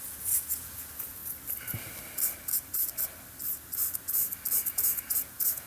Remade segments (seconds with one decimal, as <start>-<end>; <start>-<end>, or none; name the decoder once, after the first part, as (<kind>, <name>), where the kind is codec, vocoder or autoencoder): 0.0-1.2 (vocoder, Vocos); 4.6-5.7